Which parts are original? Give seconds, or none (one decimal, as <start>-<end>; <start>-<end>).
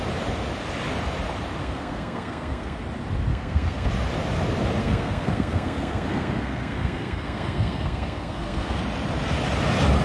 0.0-1.6; 2.8-3.3; 3.9-4.8; 8.8-10.0